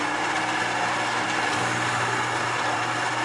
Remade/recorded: recorded